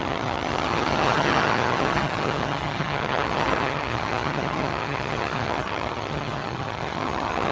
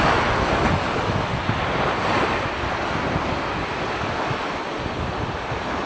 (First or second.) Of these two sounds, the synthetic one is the first